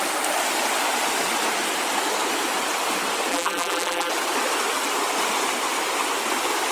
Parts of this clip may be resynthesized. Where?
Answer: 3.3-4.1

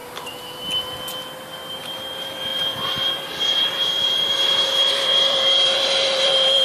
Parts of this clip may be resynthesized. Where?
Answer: 1.8-6.6